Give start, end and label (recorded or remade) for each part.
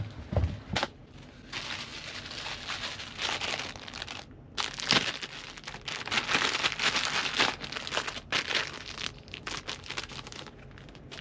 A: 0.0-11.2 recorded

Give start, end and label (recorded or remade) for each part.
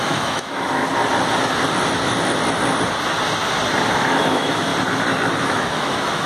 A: 0.0-0.8 remade; 0.8-3.9 recorded; 3.9-4.7 remade; 4.7-5.4 recorded; 5.4-6.3 remade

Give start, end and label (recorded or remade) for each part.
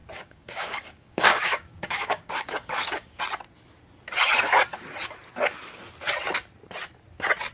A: 0.0-3.2 remade; 3.2-7.5 recorded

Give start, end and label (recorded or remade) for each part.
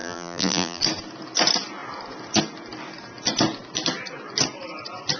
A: 0.0-0.8 remade; 0.8-5.2 recorded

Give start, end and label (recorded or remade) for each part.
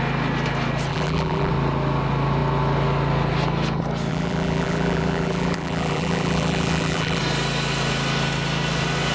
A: 0.0-0.9 recorded; 0.9-1.5 remade; 1.5-4.1 recorded; 4.1-7.2 remade; 7.2-9.1 recorded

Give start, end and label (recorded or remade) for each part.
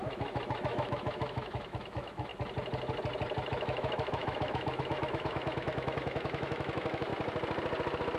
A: 0.0-2.3 remade; 2.3-3.5 recorded; 3.5-7.1 remade; 7.1-8.2 recorded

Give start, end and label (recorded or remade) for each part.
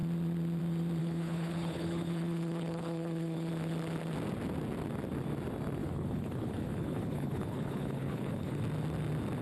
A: 0.0-1.0 recorded; 1.0-3.5 remade; 3.5-5.8 recorded; 5.8-8.6 remade; 8.6-9.4 recorded